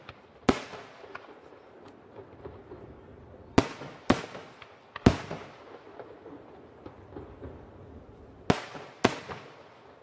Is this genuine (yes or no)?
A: yes